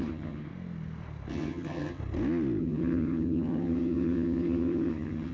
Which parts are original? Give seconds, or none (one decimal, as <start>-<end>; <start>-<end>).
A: 0.5-1.3; 2.0-2.6